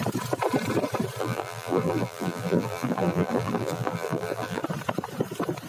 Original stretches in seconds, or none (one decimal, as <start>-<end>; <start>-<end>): 0.0-1.2; 4.6-5.7